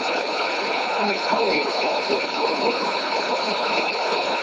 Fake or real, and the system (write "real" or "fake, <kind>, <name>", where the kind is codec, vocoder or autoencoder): fake, codec, HILCodec